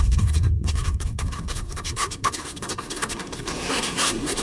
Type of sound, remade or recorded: remade